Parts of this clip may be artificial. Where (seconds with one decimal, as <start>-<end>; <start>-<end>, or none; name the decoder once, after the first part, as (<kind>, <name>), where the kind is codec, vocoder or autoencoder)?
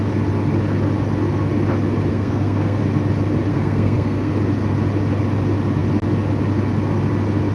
2.1-2.8 (codec, SNAC); 3.5-4.3